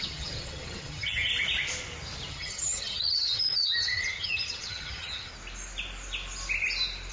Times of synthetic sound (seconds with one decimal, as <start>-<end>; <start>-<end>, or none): 0.0-1.3; 2.3-5.3